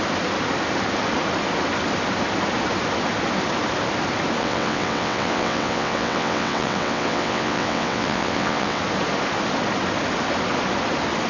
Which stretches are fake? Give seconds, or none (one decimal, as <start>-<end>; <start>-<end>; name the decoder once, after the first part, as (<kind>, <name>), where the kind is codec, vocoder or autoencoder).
4.4-8.8 (vocoder, WaveNeXt)